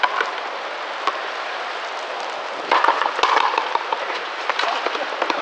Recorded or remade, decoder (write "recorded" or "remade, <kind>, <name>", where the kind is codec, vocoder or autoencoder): recorded